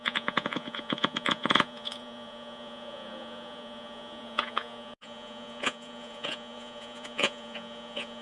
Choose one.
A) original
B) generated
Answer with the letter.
B